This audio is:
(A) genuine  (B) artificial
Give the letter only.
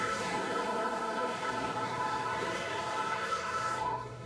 B